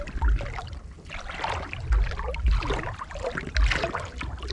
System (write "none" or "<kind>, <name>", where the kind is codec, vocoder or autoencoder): none